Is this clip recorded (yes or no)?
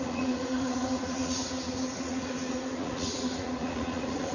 no